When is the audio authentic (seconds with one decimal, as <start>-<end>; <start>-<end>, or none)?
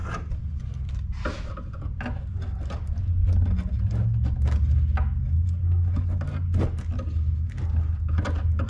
0.0-8.7